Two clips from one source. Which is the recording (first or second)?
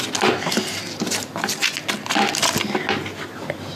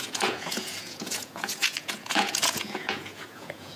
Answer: first